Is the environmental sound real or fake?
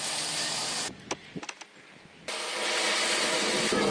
real